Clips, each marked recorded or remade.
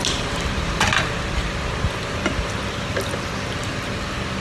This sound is recorded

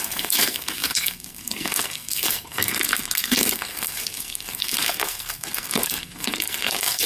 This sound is remade